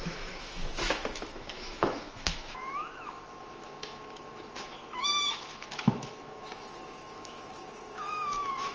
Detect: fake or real fake